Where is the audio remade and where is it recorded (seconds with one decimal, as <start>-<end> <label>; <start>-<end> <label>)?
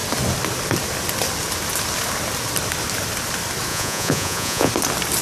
0.0-3.7 recorded; 3.7-4.7 remade; 4.7-5.2 recorded